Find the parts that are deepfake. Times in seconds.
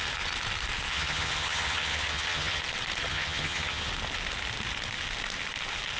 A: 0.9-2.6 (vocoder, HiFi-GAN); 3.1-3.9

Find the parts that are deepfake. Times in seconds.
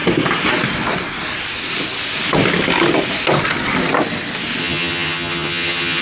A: 4.6-6.0 (vocoder, HiFi-GAN)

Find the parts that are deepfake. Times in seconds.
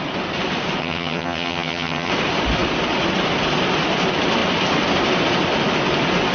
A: 0.8-2.1 (vocoder, HiFi-GAN)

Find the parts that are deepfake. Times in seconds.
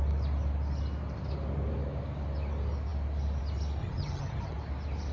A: 3.8-4.5 (vocoder, HiFi-GAN)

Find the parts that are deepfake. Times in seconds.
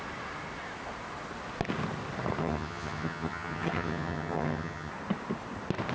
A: 2.4-4.9 (vocoder, HiFi-GAN)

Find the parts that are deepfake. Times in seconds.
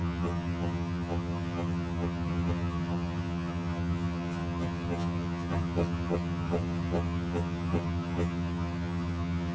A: 0.0-9.5 (vocoder, HiFi-GAN)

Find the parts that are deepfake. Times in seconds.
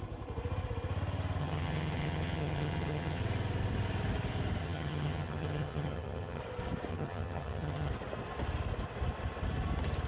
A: 1.4-3.2 (vocoder, HiFi-GAN); 4.6-6.4; 6.9-7.9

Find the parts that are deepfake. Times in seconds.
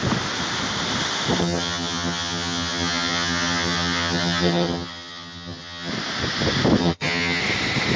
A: 1.4-5.9 (vocoder, HiFi-GAN); 6.8-7.4